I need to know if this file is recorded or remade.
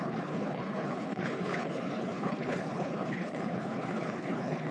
remade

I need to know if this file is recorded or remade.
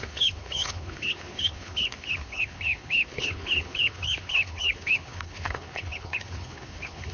remade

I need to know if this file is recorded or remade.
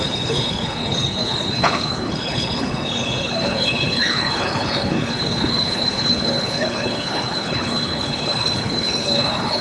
remade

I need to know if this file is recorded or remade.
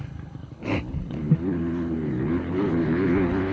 remade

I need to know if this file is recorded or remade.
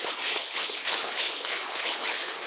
remade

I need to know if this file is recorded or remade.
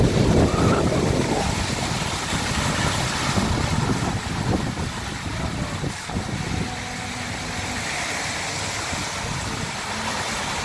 recorded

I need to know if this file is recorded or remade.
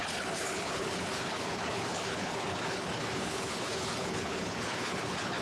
remade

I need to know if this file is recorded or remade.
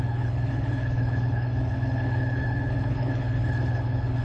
remade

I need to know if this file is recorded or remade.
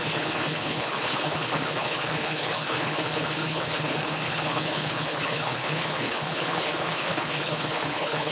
remade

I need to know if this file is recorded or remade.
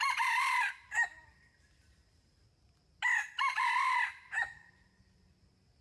recorded